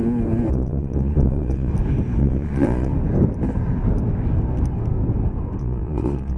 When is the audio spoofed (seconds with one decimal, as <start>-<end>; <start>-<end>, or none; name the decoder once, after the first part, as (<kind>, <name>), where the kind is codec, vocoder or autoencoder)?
0.5-1.7 (vocoder, Vocos); 2.2-2.9; 5.6-6.4